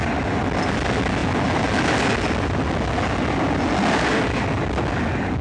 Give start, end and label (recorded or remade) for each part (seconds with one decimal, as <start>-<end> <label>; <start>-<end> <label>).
0.0-5.4 recorded